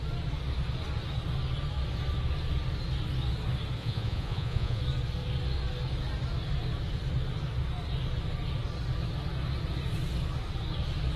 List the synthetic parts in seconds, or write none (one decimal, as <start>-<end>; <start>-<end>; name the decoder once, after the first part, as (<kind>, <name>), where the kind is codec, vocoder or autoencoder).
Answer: 3.8-4.8 (vocoder, Vocos)